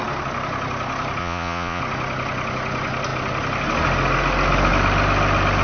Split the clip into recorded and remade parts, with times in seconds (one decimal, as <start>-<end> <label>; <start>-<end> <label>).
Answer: 0.0-1.2 recorded; 1.2-1.8 remade; 1.8-5.6 recorded